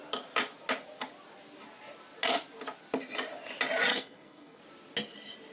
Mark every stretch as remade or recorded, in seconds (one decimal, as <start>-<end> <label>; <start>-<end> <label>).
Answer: 0.0-3.9 recorded; 3.9-4.6 remade; 4.6-5.5 recorded